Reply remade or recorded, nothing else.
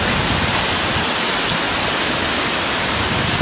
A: recorded